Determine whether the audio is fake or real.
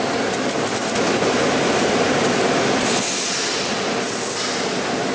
real